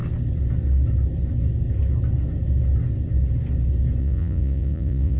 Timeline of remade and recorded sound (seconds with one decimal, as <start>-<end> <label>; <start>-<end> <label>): 0.0-4.0 recorded; 4.0-5.2 remade